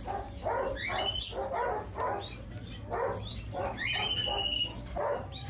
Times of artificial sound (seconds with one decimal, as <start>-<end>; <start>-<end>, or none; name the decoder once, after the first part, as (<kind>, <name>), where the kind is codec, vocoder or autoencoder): 3.3-4.4 (vocoder, BigVGAN v2)